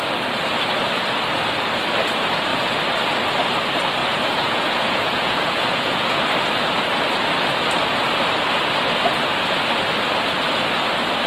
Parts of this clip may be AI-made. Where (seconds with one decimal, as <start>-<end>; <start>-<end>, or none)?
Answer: 4.0-6.2